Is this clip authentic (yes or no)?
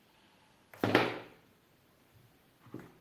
yes